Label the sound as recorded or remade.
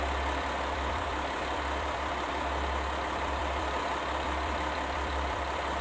remade